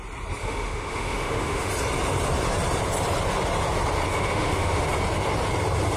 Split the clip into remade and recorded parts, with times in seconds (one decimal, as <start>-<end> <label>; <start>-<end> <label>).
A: 0.0-0.4 recorded; 0.4-1.7 remade; 1.7-4.1 recorded; 4.1-4.9 remade; 4.9-6.0 recorded

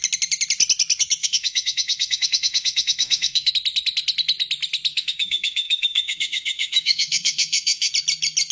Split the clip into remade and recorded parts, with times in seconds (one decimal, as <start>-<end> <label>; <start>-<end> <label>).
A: 0.0-1.2 recorded; 1.2-3.5 remade; 3.5-4.9 recorded; 4.9-7.9 remade; 7.9-8.5 recorded

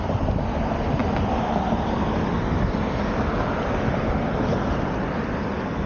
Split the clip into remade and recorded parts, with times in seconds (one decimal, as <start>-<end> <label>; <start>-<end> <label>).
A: 0.0-5.9 recorded

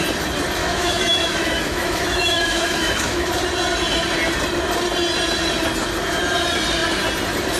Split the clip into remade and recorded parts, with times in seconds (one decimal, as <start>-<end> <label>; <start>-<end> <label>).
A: 0.0-0.6 recorded; 0.6-3.3 remade; 3.3-7.6 recorded

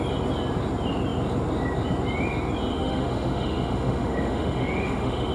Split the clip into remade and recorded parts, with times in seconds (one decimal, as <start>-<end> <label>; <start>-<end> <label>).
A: 0.0-2.7 recorded; 2.7-5.3 remade

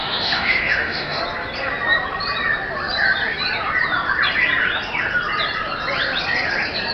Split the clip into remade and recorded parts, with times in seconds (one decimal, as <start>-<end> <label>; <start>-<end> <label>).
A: 0.0-1.2 remade; 1.2-6.9 recorded

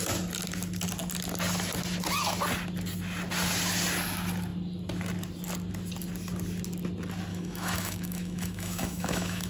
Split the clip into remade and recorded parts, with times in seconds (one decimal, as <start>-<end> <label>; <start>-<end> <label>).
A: 0.0-7.3 recorded; 7.3-9.5 remade